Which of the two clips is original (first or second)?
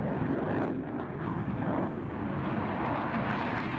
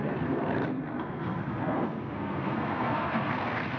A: first